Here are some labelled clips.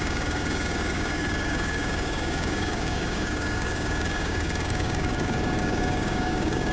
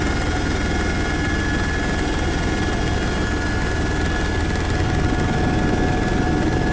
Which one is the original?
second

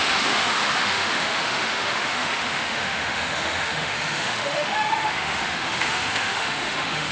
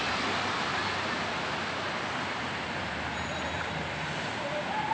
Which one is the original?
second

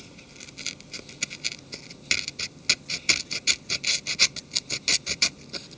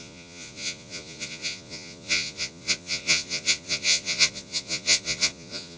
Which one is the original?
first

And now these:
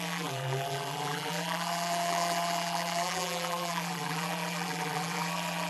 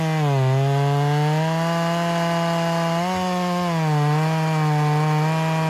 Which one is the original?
second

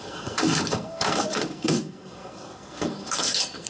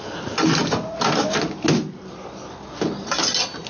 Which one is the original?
second